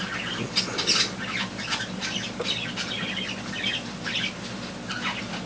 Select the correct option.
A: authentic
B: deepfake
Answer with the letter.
A